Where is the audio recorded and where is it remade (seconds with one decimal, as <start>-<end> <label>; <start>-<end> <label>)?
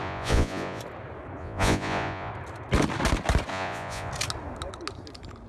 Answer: 0.0-0.8 remade; 0.8-1.4 recorded; 1.4-2.3 remade; 2.3-3.5 recorded; 3.5-4.1 remade; 4.1-5.5 recorded